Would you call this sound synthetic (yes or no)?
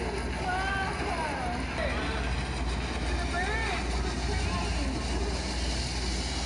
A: no